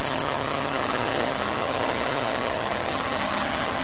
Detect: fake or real fake